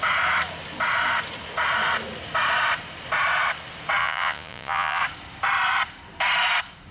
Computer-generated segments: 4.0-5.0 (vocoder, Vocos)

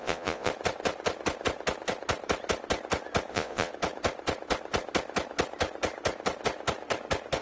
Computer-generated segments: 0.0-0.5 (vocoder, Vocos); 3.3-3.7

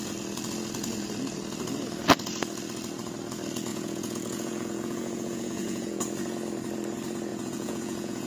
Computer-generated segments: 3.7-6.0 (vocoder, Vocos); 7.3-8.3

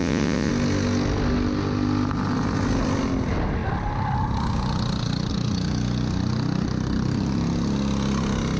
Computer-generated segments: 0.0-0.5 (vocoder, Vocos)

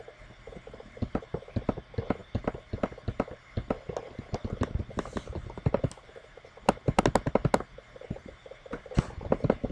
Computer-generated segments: none